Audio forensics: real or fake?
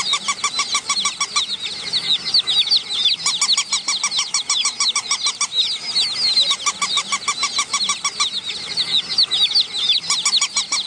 real